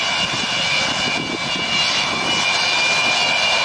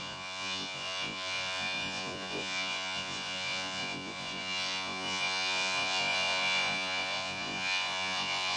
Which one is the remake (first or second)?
second